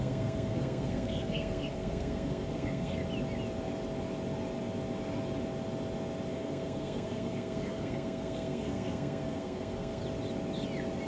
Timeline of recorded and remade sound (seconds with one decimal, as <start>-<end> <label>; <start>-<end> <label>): 0.0-3.0 remade; 3.0-6.3 recorded; 6.3-10.0 remade; 10.0-11.1 recorded